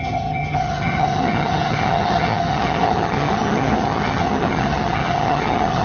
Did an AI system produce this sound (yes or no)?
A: yes